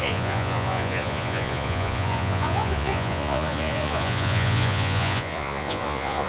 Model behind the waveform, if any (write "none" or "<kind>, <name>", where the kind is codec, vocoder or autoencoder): vocoder, Vocos